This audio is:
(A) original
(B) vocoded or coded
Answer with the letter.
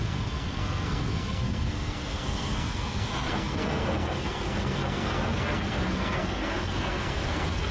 B